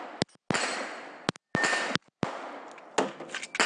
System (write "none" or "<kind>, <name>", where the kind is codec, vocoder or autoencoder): none